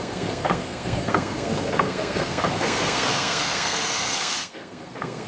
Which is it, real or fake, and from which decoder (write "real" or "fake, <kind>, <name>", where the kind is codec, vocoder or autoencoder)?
fake, codec, SNAC